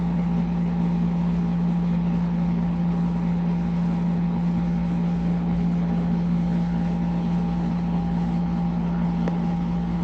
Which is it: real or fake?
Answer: fake